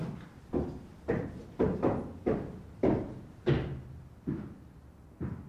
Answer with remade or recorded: recorded